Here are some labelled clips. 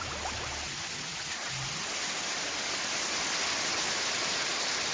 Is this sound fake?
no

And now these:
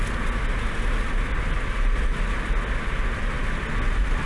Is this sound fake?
no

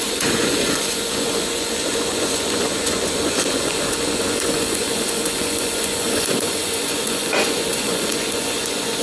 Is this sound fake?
yes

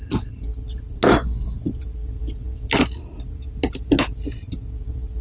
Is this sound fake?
no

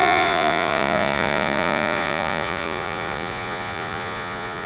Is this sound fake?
yes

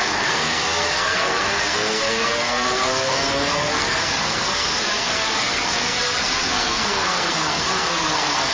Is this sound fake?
yes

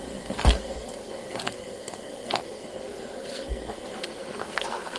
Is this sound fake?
yes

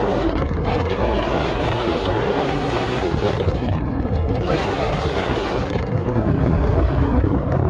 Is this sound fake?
yes